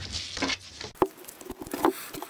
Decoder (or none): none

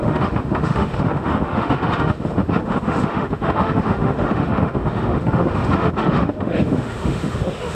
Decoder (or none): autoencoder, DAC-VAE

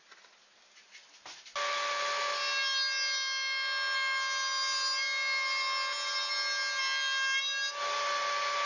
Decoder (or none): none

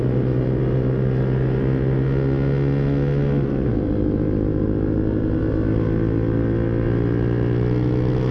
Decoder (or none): none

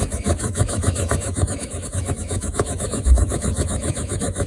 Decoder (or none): autoencoder, DAC-VAE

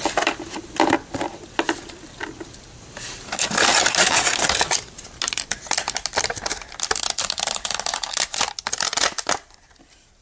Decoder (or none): none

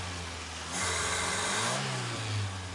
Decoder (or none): none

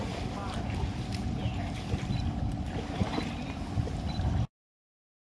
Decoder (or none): none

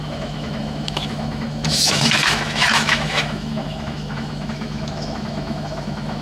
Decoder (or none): autoencoder, DAC-VAE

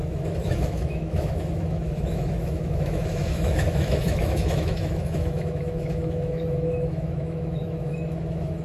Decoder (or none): autoencoder, DAC-VAE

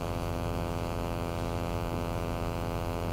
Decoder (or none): autoencoder, DAC-VAE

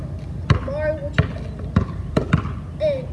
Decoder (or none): none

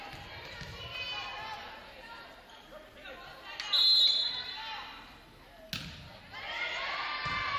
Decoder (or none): none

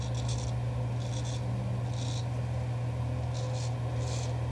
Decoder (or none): none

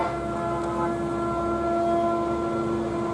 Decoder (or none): none